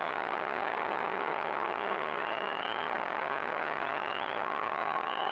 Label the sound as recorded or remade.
remade